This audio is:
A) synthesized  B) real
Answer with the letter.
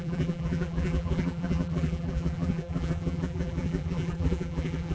A